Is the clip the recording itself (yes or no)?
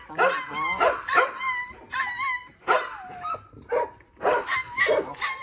yes